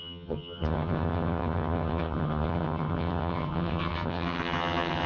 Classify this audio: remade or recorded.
remade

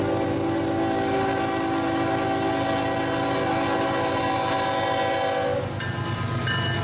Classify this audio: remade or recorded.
recorded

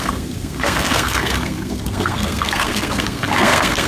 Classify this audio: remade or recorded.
remade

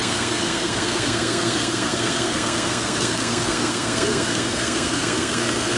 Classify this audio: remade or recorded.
remade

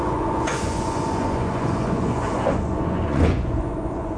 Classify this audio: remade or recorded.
remade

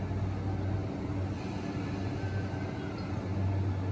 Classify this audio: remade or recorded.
recorded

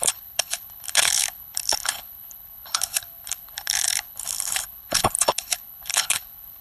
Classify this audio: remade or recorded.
remade